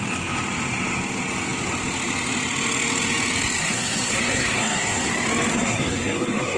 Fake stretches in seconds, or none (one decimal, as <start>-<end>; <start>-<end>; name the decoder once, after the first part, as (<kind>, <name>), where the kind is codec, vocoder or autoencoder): 3.6-5.1 (codec, SNAC); 5.5-6.6